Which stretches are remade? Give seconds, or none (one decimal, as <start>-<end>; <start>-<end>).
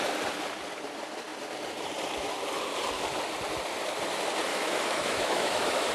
4.5-5.9